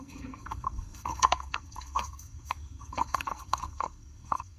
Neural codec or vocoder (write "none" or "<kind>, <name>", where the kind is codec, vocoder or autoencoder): codec, SNAC